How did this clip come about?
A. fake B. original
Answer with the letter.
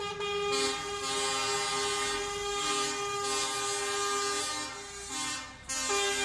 B